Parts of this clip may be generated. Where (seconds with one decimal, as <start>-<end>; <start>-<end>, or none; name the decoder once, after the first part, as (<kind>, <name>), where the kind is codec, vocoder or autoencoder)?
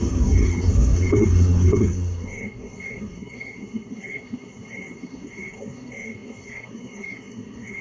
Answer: 0.0-7.8 (codec, SNAC)